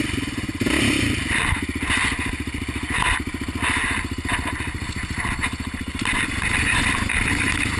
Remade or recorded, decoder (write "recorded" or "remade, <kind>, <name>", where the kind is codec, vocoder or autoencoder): recorded